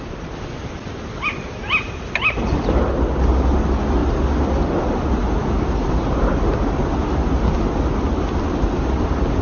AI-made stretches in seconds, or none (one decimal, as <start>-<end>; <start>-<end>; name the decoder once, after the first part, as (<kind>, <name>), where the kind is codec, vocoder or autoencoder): none